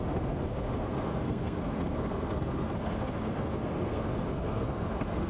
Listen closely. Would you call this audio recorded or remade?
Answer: remade